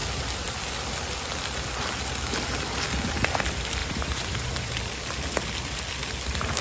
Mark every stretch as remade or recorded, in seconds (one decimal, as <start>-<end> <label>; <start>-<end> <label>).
0.0-3.8 recorded; 3.8-4.7 remade; 4.7-6.6 recorded